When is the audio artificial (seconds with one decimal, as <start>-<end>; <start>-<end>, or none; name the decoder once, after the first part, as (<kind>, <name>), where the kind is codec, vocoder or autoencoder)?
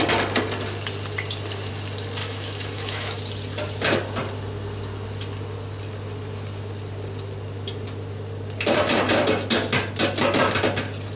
2.2-3.2 (autoencoder, DAC-VAE)